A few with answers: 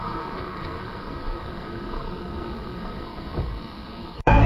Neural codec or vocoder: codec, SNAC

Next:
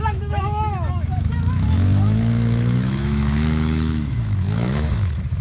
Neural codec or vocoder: autoencoder, DAC-VAE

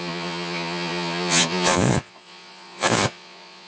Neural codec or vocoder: vocoder, Vocos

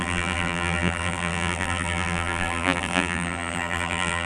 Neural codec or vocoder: vocoder, BigVGAN v2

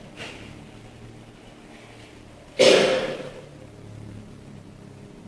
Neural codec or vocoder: none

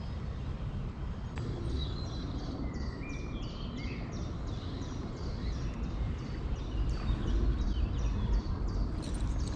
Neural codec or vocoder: none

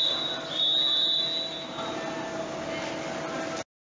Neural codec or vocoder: none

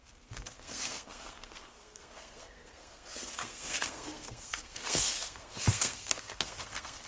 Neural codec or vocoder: codec, SNAC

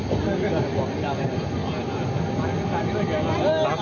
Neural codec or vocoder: none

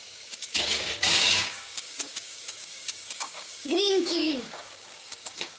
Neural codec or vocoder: codec, DAC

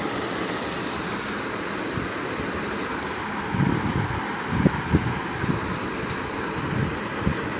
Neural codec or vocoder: none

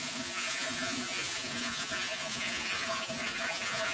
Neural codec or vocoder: vocoder, Vocos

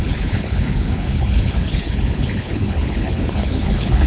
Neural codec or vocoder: codec, HILCodec